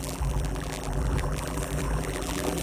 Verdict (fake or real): fake